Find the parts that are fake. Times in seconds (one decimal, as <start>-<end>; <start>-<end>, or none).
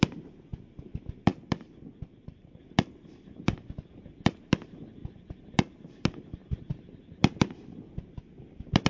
1.3-2.6; 5.0-5.5; 6.4-8.2